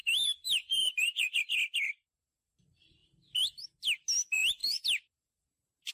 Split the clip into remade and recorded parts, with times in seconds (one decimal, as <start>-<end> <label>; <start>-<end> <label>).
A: 0.0-1.4 remade; 1.4-4.6 recorded; 4.6-5.9 remade